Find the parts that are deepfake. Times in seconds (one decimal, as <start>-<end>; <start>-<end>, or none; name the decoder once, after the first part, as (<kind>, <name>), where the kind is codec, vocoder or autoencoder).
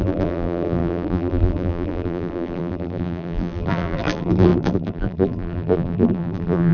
0.0-6.7 (vocoder, BigVGAN v2)